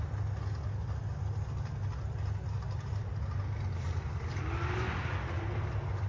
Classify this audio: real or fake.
real